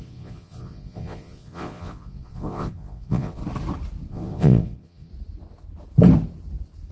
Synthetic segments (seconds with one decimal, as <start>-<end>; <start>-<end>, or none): 0.0-3.4; 4.1-5.1